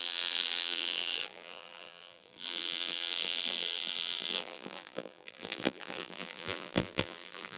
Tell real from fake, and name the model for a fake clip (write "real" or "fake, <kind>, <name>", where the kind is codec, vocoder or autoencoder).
fake, vocoder, BigVGAN v2